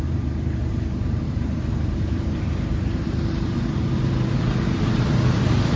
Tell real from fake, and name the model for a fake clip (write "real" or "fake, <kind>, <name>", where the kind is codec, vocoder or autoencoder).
fake, vocoder, BigVGAN v2